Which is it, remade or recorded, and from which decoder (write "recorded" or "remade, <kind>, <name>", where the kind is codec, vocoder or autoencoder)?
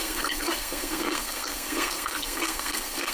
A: remade, codec, SNAC